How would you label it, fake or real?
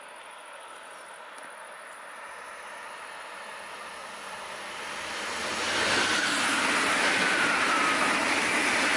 real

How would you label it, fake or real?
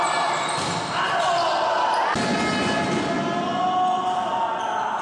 real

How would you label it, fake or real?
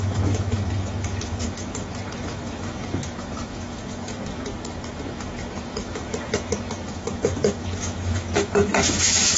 fake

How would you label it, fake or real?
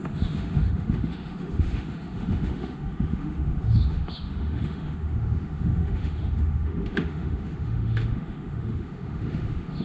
fake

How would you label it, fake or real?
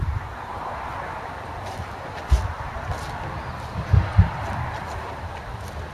real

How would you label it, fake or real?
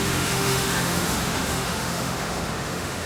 fake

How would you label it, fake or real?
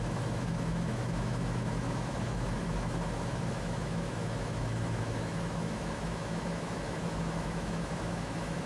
fake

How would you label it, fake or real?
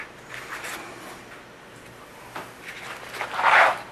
real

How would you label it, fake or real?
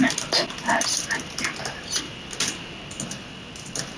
real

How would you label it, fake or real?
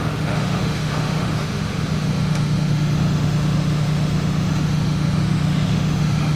fake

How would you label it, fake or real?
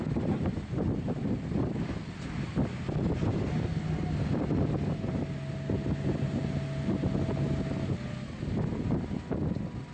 real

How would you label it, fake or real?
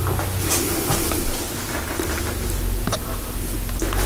real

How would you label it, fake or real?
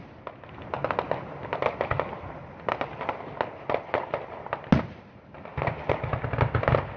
real